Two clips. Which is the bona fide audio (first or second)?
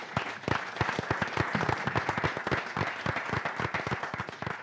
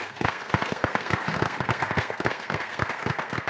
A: first